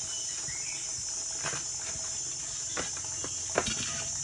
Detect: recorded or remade recorded